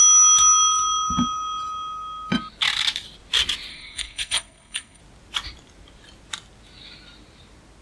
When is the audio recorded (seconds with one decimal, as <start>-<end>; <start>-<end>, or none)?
0.0-3.7; 5.0-7.8